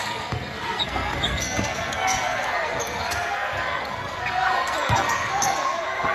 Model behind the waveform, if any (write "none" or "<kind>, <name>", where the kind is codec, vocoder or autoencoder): codec, SNAC